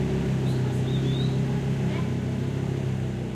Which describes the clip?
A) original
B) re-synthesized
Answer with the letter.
A